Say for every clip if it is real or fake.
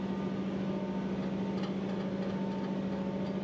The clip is real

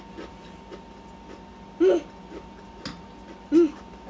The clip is real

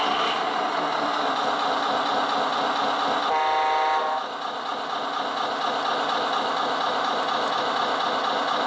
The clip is real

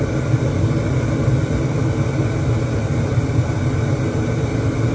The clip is real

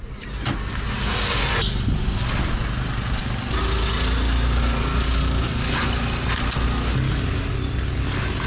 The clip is real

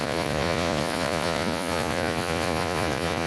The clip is fake